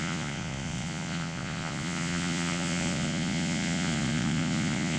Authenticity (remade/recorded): remade